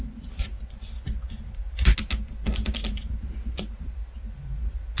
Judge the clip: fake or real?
real